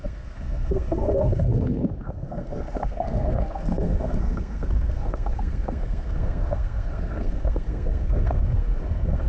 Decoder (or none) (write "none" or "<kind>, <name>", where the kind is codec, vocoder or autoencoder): codec, SNAC